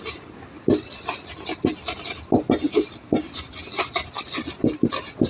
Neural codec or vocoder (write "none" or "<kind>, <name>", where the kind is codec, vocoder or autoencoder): none